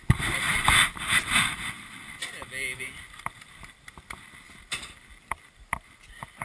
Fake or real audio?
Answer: real